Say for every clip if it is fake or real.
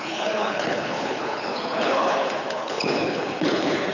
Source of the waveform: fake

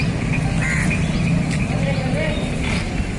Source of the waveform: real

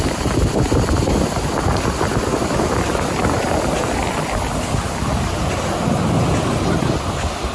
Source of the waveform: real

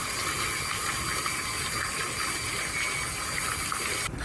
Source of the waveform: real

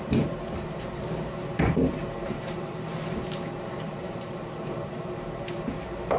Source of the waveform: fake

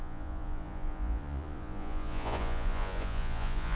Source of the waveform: fake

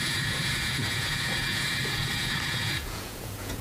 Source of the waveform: fake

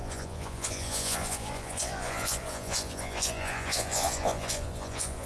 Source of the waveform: fake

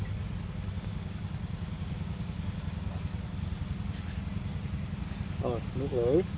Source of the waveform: fake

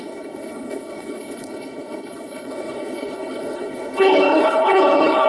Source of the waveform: fake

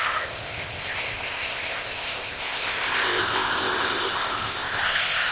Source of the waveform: fake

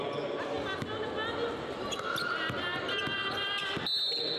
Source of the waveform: real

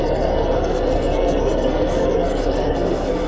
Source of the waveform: fake